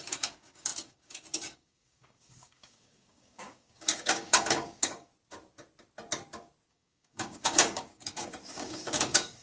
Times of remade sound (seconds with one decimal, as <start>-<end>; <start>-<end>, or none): 0.0-5.1; 6.7-9.4